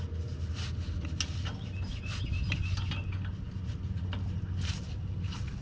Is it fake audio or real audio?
real